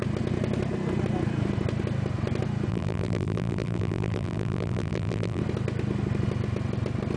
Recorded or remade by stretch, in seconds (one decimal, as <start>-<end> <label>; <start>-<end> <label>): 0.0-2.7 recorded; 2.7-5.4 remade; 5.4-7.2 recorded